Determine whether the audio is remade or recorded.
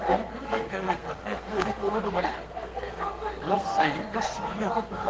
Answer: remade